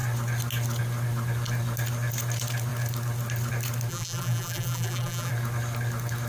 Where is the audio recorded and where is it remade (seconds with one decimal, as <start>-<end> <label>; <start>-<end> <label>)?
0.0-3.9 recorded; 3.9-5.3 remade; 5.3-6.3 recorded